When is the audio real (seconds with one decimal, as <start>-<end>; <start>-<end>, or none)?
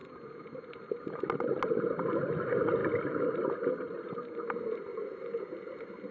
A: 0.0-6.1